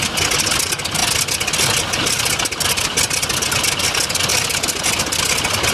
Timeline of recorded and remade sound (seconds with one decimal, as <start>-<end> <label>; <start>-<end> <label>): 0.0-5.7 recorded